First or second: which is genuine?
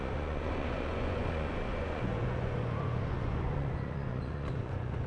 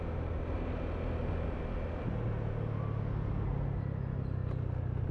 second